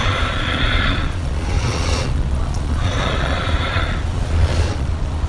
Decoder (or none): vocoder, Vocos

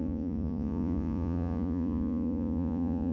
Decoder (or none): vocoder, Vocos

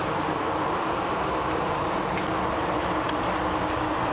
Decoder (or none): none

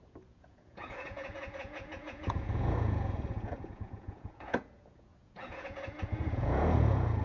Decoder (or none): vocoder, Vocos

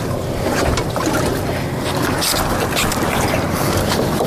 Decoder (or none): none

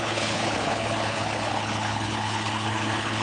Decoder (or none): codec, HILCodec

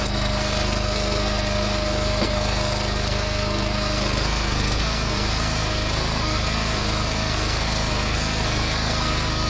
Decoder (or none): codec, SNAC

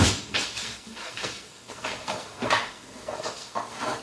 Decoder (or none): codec, SNAC